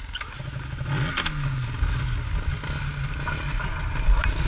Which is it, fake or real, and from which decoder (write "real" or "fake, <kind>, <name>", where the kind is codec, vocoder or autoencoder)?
real